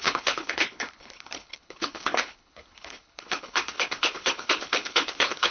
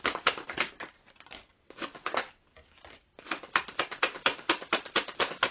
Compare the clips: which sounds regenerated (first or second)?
first